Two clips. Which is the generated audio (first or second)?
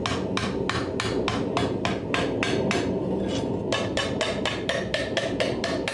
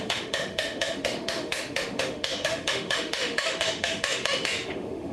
second